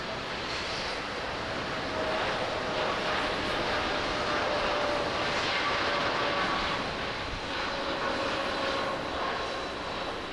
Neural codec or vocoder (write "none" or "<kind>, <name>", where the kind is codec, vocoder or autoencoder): none